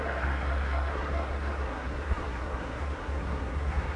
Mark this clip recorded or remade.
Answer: remade